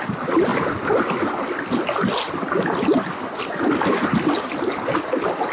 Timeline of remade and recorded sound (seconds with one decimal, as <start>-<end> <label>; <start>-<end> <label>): 0.0-5.5 recorded